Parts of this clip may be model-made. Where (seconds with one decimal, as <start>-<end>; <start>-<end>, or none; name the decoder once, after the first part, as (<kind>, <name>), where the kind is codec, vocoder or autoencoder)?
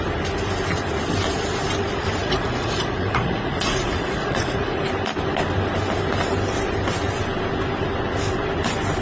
2.2-4.8 (vocoder, Vocos)